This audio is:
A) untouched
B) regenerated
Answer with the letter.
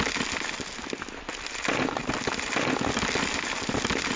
A